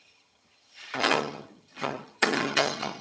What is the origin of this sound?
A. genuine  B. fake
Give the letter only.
B